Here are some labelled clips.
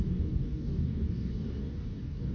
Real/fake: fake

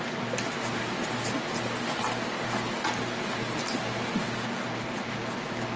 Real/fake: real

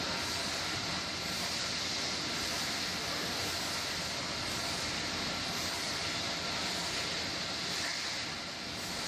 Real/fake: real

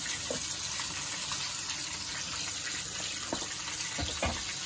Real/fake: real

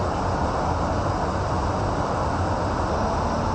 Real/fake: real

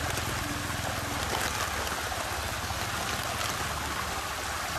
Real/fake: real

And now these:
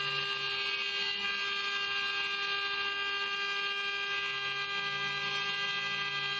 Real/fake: real